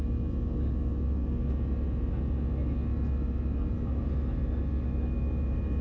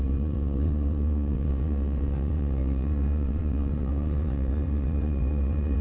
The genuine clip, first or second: first